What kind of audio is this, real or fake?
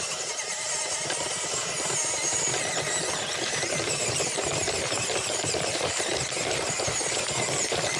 fake